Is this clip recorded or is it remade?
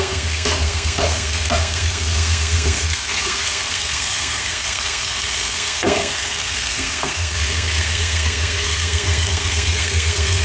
remade